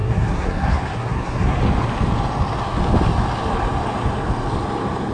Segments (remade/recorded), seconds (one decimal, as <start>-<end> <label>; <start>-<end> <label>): 0.0-1.6 remade; 1.6-5.1 recorded